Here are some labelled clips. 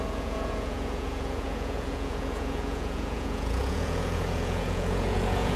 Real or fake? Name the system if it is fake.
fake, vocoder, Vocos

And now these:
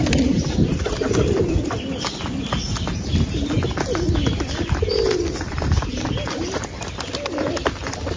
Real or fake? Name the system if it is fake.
real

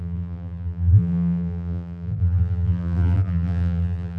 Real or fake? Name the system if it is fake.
fake, vocoder, BigVGAN v2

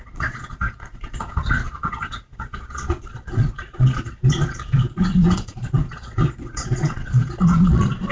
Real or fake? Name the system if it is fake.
fake, vocoder, Vocos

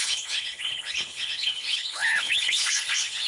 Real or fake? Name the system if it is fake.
fake, codec, HILCodec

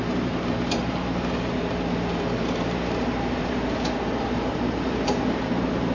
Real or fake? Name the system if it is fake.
fake, vocoder, BigVGAN v2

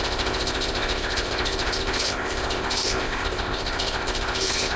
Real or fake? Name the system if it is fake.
fake, codec, ZipCodec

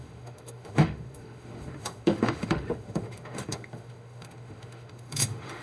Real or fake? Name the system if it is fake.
fake, autoencoder, DAC-VAE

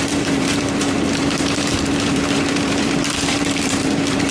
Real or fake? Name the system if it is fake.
fake, vocoder, BigVGAN v2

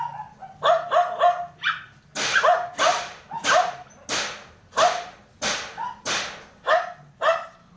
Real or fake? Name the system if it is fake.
real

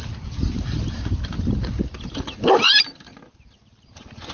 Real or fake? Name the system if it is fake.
real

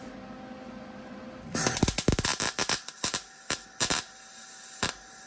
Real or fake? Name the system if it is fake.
real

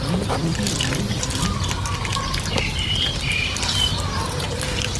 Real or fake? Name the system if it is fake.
real